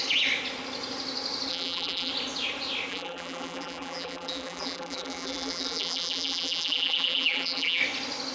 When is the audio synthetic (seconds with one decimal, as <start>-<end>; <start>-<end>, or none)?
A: 1.5-2.1; 2.9-7.8